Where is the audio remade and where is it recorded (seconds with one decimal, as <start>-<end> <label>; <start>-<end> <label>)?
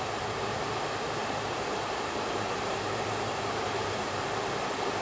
0.0-1.2 recorded; 1.2-4.2 remade; 4.2-5.0 recorded